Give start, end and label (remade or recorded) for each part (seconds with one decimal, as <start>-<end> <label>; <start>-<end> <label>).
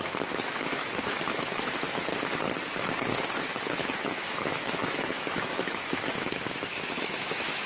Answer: 0.0-2.1 remade; 2.1-3.7 recorded; 3.7-7.7 remade